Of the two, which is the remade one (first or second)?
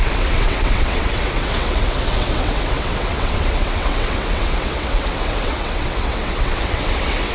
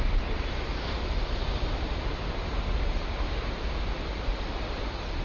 first